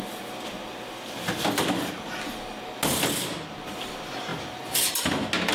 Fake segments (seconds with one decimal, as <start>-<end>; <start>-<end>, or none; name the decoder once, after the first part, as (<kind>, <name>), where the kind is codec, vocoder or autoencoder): 4.3-4.9 (vocoder, BigVGAN v2)